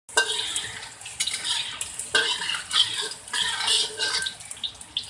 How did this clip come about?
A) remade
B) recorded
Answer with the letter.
B